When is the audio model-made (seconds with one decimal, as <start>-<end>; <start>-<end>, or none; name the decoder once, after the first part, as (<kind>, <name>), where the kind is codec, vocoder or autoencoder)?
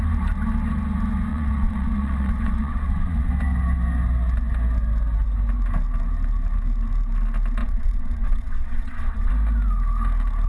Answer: 1.3-3.3 (vocoder, WaveNeXt); 7.6-9.3